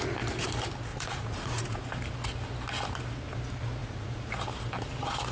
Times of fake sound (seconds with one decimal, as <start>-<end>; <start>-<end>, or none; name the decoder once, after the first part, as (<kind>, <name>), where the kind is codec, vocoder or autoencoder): 0.9-1.9 (vocoder, Vocos); 3.8-4.3